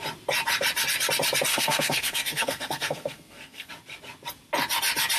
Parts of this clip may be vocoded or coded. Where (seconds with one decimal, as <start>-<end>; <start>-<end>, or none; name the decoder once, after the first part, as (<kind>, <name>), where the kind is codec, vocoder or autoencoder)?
1.5-3.7 (codec, SNAC)